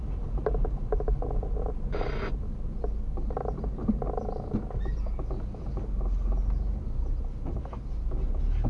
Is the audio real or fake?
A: real